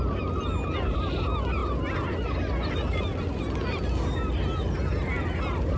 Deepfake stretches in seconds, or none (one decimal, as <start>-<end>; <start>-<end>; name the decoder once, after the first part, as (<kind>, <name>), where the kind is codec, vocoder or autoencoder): none